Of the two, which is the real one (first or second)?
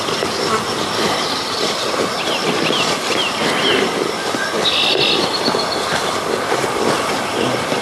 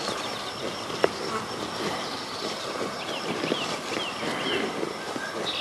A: second